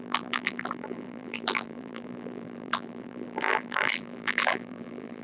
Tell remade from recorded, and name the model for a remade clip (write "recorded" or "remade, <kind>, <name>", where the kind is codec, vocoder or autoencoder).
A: remade, vocoder, BigVGAN v2